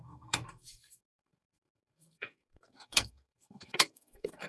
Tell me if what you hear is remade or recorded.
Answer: remade